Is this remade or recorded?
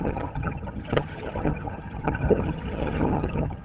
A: remade